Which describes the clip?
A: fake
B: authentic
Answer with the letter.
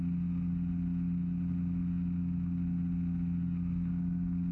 B